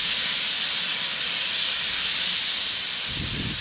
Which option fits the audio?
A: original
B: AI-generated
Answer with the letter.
A